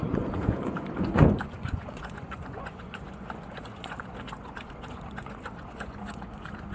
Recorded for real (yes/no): no